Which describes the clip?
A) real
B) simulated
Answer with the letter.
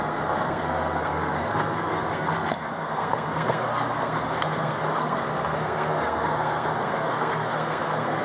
B